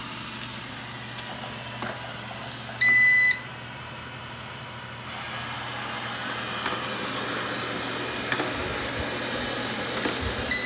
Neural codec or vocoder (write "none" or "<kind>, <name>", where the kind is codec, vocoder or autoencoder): none